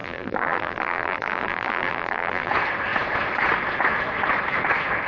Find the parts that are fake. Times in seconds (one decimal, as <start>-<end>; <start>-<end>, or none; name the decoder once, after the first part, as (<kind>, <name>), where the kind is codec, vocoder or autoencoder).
0.0-2.5 (vocoder, BigVGAN v2)